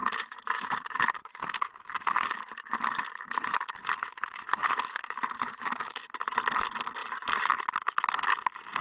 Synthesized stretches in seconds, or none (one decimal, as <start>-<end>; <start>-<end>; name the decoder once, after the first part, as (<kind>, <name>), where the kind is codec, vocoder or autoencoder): 0.0-1.3 (vocoder, BigVGAN v2); 5.0-5.9; 7.0-7.6